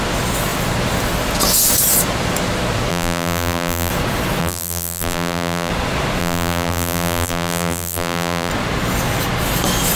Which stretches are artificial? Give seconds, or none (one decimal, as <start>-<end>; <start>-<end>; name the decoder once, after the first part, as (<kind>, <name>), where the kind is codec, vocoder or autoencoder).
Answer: 2.9-3.9 (vocoder, BigVGAN v2); 4.4-5.7; 6.2-8.5